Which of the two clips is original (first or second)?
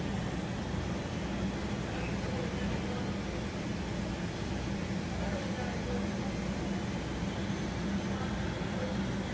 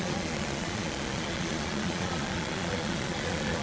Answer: first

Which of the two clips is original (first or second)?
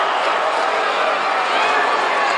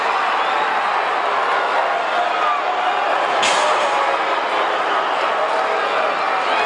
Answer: second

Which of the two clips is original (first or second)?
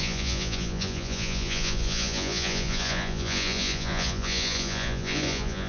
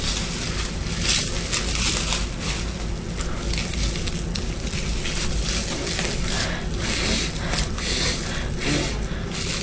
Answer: second